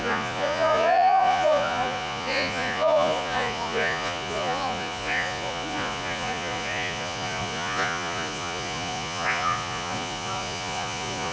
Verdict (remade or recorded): remade